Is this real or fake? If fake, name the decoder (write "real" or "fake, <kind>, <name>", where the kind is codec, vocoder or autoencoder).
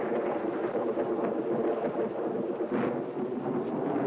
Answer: fake, vocoder, BigVGAN v2